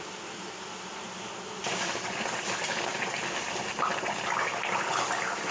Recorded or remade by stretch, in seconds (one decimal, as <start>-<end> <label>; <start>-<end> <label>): 0.0-5.5 recorded